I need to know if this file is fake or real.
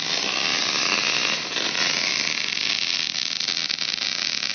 real